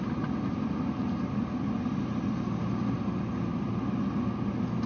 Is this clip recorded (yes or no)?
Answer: yes